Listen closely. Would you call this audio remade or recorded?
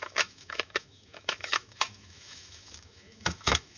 remade